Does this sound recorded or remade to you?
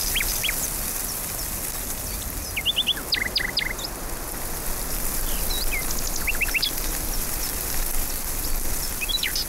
recorded